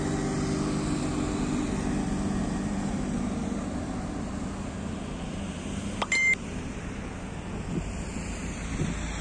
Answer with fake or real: real